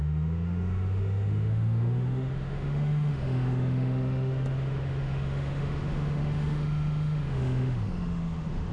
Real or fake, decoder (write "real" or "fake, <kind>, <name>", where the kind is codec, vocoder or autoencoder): fake, autoencoder, DAC-VAE